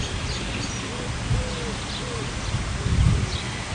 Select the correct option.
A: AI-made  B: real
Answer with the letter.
B